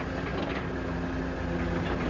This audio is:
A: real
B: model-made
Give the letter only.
A